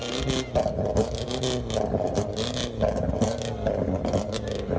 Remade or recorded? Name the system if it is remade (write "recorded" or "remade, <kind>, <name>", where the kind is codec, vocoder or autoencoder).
recorded